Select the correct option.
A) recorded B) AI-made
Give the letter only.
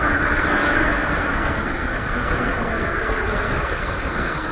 B